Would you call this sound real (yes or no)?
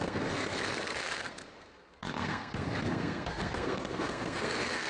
no